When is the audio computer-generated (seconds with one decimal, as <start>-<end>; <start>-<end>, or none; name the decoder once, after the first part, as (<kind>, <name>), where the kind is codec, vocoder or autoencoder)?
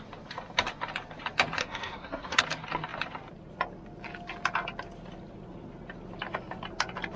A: 1.6-2.4 (codec, SNAC)